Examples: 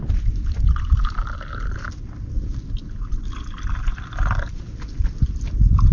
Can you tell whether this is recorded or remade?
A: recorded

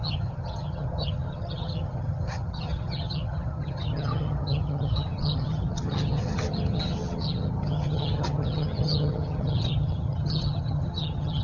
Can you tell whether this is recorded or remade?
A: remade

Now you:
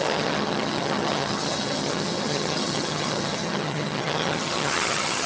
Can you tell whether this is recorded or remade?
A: remade